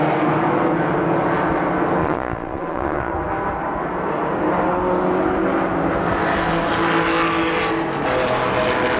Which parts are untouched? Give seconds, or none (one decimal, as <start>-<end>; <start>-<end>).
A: 0.0-2.0; 3.1-9.0